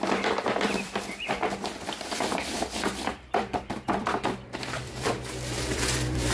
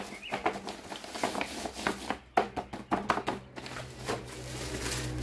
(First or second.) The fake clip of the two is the first